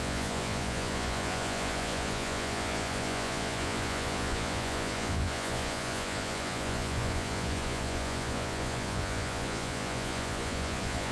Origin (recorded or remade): remade